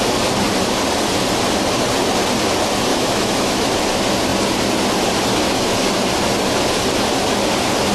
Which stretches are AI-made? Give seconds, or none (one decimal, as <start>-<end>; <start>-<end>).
2.9-3.7